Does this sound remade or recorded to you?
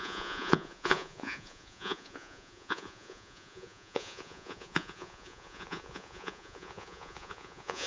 remade